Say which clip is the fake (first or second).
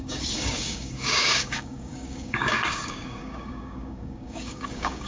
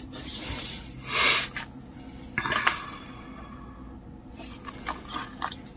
first